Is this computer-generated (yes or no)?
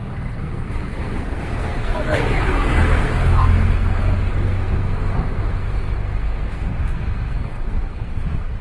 yes